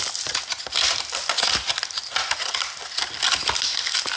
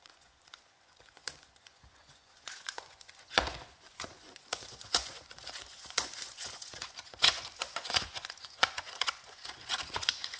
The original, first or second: first